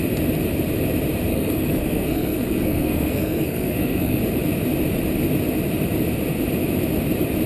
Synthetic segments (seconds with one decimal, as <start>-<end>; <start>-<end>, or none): 1.3-4.2